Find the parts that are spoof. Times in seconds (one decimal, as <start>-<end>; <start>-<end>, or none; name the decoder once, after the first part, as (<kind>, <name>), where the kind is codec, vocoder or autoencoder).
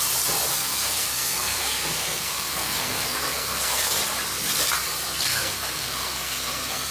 0.5-4.0 (codec, SNAC); 5.3-6.9